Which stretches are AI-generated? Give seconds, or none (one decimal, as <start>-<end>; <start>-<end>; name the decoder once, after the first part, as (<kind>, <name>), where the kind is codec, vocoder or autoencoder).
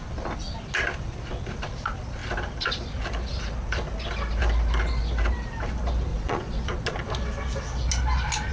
6.1-6.6 (vocoder, Vocos)